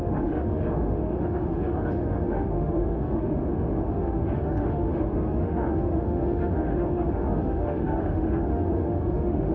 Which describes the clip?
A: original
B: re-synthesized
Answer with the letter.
B